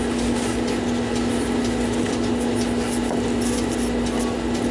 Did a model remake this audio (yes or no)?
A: no